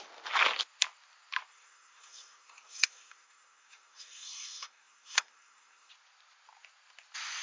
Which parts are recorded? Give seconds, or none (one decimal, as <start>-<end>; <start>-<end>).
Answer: 0.0-1.5; 5.9-7.4